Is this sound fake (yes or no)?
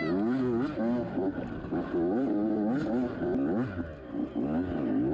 no